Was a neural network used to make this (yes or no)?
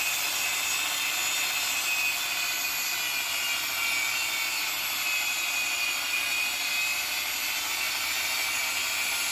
no